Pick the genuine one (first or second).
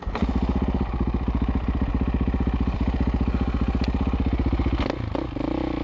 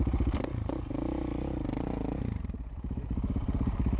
first